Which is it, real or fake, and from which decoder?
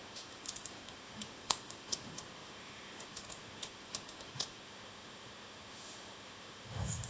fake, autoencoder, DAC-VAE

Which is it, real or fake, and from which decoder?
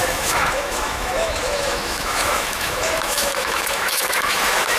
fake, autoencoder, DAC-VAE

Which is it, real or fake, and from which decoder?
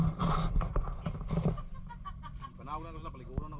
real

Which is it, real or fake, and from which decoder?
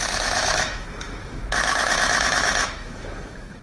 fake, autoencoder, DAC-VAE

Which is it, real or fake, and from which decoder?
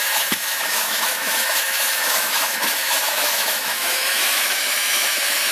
fake, autoencoder, DAC-VAE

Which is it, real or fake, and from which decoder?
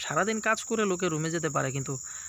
real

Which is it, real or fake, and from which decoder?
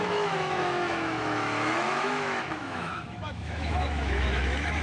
fake, autoencoder, DAC-VAE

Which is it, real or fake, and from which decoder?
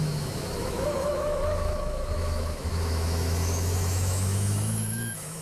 fake, autoencoder, DAC-VAE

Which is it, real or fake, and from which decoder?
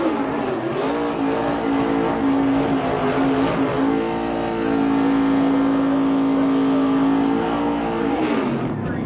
real